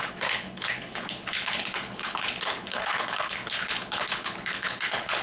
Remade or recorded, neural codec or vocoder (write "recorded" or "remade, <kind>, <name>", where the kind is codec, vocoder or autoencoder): remade, codec, HILCodec